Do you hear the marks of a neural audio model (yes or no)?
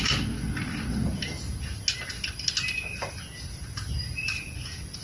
no